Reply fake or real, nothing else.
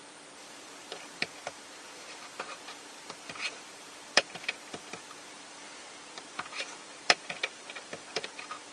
fake